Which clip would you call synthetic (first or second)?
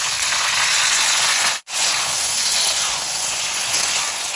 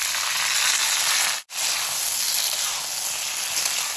first